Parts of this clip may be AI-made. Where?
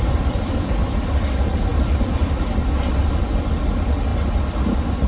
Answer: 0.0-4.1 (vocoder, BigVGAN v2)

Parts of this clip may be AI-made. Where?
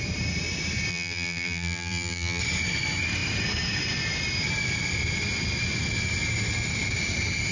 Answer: 0.9-2.4 (vocoder, BigVGAN v2)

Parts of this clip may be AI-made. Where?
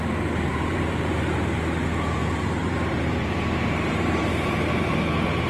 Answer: 0.5-1.1 (vocoder, BigVGAN v2); 2.2-4.8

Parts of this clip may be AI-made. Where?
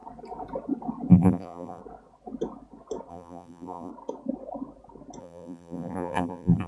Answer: 1.1-1.8 (vocoder, BigVGAN v2); 3.1-3.9; 5.2-6.7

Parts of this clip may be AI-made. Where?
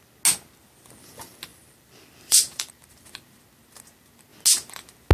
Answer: 1.5-2.7 (vocoder, BigVGAN v2)